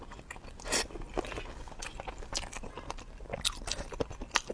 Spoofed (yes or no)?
no